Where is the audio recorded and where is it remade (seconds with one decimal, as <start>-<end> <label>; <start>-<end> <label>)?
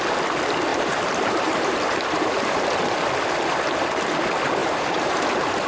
0.0-0.7 recorded; 0.7-2.7 remade; 2.7-4.6 recorded; 4.6-5.2 remade; 5.2-5.7 recorded